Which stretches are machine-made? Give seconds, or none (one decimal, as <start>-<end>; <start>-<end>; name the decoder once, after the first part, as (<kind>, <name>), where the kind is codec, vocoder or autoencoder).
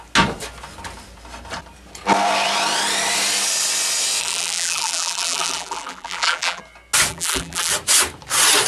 4.2-6.6 (vocoder, BigVGAN v2); 7.1-7.7